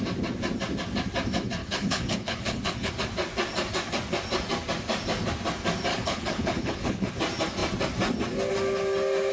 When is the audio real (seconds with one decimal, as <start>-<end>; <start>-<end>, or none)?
0.0-1.6; 2.9-5.9; 7.1-9.3